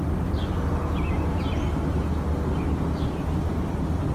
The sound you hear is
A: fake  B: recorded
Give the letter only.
B